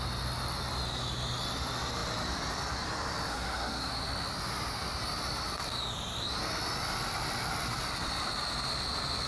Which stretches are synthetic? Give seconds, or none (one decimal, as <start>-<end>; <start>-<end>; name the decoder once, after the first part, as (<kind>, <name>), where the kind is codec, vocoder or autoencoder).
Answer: 3.3-3.9 (codec, SNAC)